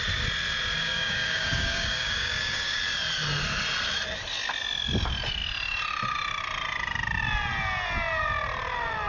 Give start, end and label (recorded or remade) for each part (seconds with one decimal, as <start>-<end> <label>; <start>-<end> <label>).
0.0-0.8 recorded; 0.8-2.8 remade; 2.8-9.1 recorded